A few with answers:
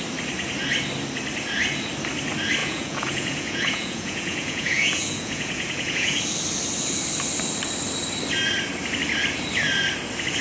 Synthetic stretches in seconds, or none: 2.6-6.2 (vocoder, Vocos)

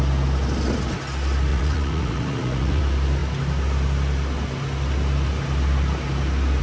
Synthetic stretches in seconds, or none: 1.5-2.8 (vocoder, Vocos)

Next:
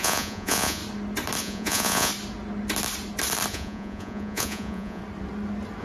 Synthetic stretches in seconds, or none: 0.0-0.8 (vocoder, Vocos); 1.4-2.1; 3.5-5.0

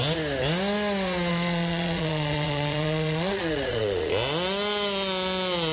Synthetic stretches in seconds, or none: 1.3-4.1 (vocoder, Vocos)